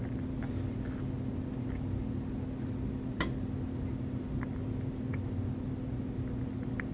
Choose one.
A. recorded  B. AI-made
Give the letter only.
A